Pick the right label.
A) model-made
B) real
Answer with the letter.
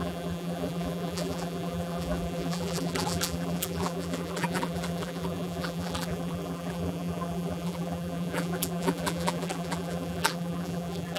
A